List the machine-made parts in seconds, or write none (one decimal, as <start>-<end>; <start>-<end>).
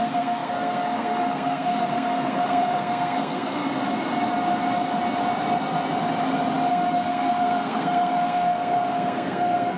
0.0-3.6; 6.7-9.8